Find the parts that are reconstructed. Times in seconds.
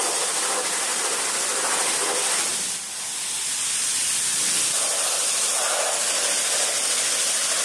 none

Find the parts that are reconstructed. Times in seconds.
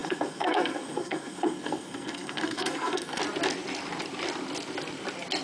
0.0-3.2 (codec, SNAC)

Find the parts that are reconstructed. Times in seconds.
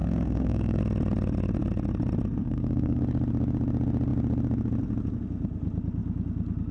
0.0-0.8 (codec, SNAC); 2.4-3.0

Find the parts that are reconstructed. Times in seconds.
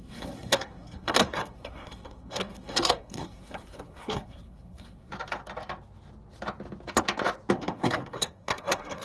0.0-5.1 (codec, SNAC); 7.6-9.0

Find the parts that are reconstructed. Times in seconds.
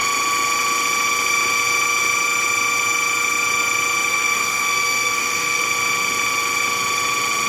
4.1-5.6 (codec, SNAC)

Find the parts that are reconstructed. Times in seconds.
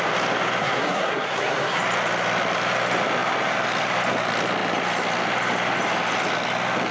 0.6-1.8 (codec, SNAC)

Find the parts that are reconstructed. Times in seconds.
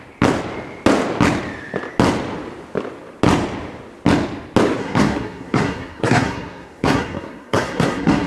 4.8-8.3 (codec, SNAC)